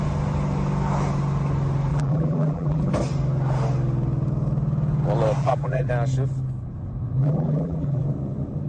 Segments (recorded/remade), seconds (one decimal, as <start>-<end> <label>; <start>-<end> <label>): 0.0-1.9 recorded; 1.9-2.9 remade; 2.9-5.4 recorded; 5.4-5.9 remade; 5.9-7.2 recorded; 7.2-8.0 remade; 8.0-8.7 recorded